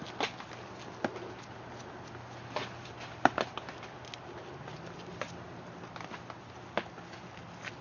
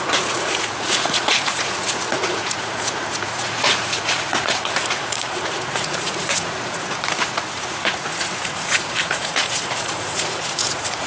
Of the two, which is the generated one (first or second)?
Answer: second